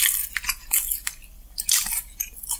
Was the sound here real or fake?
real